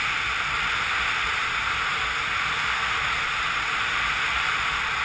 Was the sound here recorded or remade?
recorded